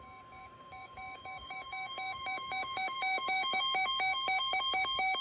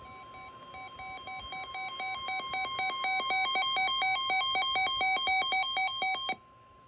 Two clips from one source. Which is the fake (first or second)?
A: first